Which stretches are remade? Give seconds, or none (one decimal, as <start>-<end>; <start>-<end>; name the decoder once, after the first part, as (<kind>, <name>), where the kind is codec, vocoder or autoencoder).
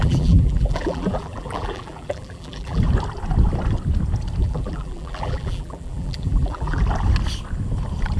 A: 0.0-2.8 (vocoder, BigVGAN v2); 4.4-6.8